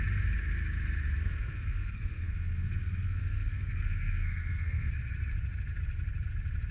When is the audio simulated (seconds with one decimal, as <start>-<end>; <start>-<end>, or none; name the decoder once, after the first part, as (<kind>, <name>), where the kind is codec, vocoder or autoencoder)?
1.2-4.9 (codec, SNAC)